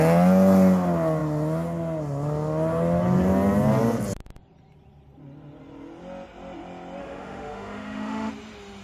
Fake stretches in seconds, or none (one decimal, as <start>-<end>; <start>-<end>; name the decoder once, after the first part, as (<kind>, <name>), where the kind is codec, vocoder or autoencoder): 7.0-8.3 (autoencoder, DAC-VAE)